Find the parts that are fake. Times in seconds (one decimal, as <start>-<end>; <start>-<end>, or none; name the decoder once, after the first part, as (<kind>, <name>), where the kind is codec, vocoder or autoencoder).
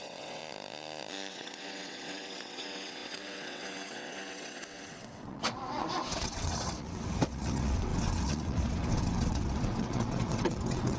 0.0-0.4 (vocoder, WaveNeXt); 1.3-11.0